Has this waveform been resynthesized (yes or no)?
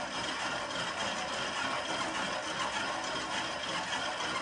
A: no